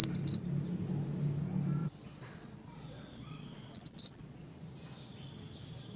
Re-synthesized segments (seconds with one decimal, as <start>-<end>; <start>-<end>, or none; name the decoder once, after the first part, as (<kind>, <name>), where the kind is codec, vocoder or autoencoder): 1.8-4.5 (vocoder, Vocos)